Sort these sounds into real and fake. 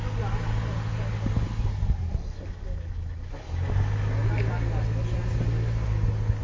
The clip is real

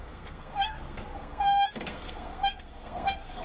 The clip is fake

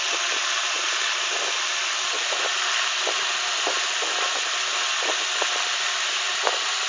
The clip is real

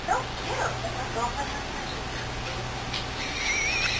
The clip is real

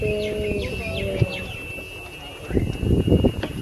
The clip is real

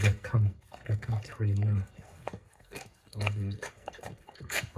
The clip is fake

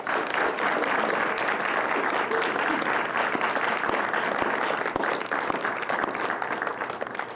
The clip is real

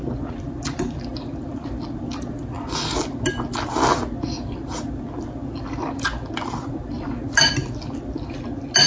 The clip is real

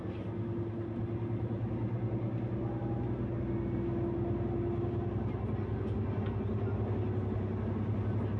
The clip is real